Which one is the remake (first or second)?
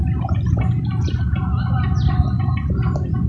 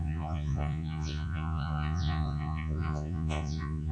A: second